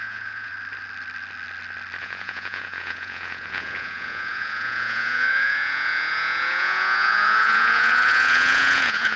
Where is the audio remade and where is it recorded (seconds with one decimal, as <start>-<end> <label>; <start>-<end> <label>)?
0.0-0.5 remade; 0.5-2.0 recorded; 2.0-9.2 remade